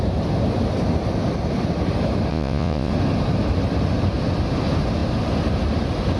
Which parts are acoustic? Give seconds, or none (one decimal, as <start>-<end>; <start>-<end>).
0.0-2.3; 2.9-6.2